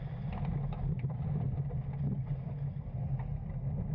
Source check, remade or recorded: recorded